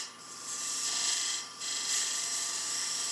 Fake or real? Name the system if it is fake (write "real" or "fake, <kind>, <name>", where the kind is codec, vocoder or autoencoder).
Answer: fake, vocoder, BigVGAN v2